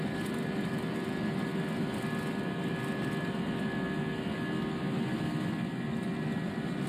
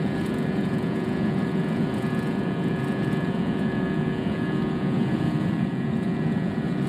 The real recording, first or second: first